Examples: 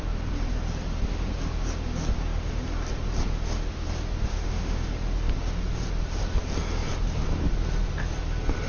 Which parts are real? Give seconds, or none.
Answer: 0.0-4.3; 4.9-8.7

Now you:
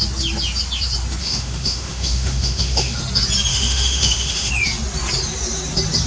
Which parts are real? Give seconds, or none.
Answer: 0.0-1.2; 3.0-3.5; 4.5-6.1

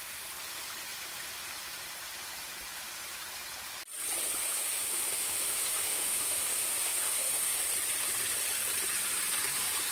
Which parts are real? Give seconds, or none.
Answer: 0.0-4.4; 7.6-9.9

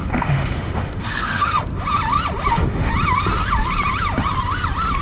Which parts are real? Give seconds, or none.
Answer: 1.6-2.5; 2.9-5.0

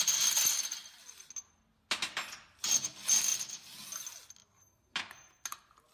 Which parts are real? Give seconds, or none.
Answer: 0.0-5.9

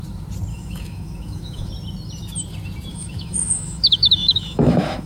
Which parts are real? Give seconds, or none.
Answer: 0.0-0.5; 1.7-2.9

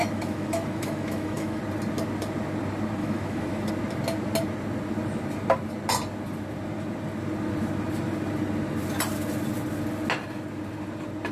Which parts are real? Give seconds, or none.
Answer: 1.6-3.0; 3.7-11.3